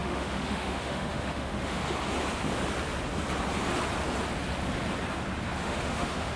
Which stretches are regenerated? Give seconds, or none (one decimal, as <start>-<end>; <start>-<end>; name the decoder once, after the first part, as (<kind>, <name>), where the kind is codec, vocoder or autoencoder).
0.0-1.8 (autoencoder, DAC-VAE); 5.6-6.4